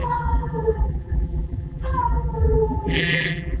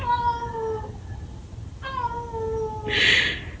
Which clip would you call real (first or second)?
second